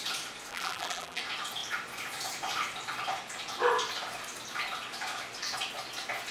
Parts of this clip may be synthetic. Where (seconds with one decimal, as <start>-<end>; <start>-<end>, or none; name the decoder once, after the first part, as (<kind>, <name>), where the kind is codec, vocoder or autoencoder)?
0.5-1.2 (vocoder, BigVGAN v2)